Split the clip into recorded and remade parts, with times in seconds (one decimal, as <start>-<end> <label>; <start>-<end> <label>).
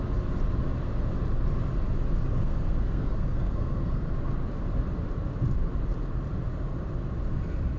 0.0-2.3 recorded; 2.3-4.1 remade; 4.1-7.8 recorded